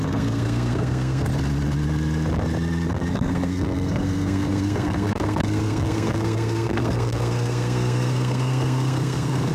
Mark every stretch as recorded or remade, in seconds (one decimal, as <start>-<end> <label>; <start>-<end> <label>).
0.0-1.3 remade; 1.3-3.1 recorded; 3.1-9.5 remade